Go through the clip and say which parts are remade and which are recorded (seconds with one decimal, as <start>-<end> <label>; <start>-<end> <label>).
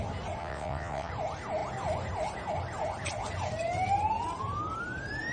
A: 0.0-0.4 recorded; 0.4-1.1 remade; 1.1-5.3 recorded